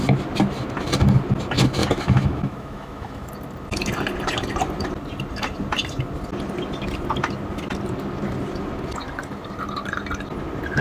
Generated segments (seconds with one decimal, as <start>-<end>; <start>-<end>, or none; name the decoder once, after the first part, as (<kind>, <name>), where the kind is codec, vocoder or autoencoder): 1.8-3.3 (autoencoder, DAC-VAE)